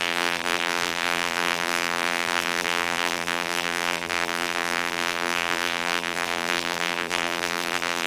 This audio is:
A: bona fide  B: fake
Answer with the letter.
B